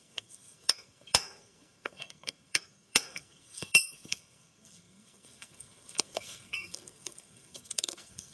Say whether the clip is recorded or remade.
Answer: remade